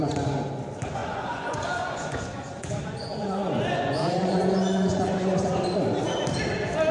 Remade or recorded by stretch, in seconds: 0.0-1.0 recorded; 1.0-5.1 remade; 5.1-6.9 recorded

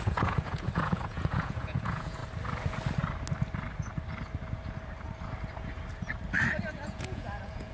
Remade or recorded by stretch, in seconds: 0.0-2.2 remade; 2.2-6.7 recorded; 6.7-7.7 remade

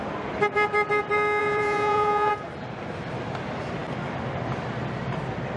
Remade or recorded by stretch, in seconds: 0.0-1.4 recorded; 1.4-2.3 remade; 2.3-5.6 recorded

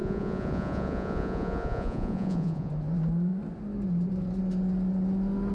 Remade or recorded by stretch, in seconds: 0.0-2.7 remade; 2.7-5.5 recorded